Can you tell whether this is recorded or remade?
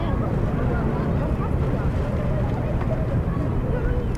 recorded